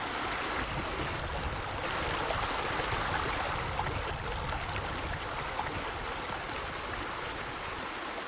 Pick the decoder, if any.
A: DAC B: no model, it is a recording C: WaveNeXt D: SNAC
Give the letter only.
B